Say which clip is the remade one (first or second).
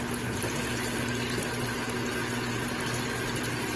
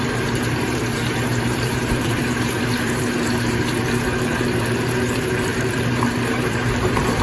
second